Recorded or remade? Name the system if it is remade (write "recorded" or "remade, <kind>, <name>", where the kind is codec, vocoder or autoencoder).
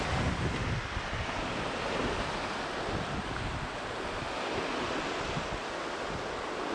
recorded